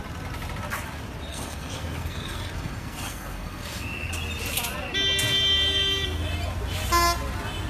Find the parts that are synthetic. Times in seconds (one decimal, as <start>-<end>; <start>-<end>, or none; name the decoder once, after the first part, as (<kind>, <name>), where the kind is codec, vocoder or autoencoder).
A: 1.3-4.1 (codec, SNAC)